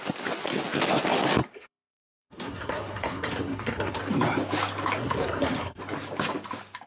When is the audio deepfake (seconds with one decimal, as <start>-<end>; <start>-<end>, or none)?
1.4-4.0; 5.0-5.8